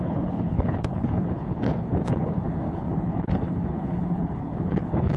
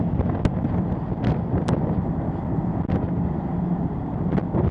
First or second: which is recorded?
second